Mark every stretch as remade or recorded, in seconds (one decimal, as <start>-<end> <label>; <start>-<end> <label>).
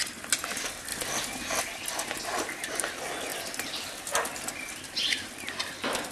0.0-6.1 recorded